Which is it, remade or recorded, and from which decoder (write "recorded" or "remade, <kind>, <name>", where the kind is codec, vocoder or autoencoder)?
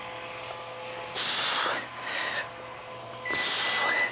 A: recorded